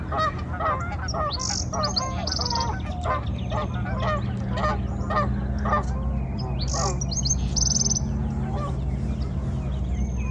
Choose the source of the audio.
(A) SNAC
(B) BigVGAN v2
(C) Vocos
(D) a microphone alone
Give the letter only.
D